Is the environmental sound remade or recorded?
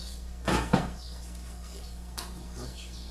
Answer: remade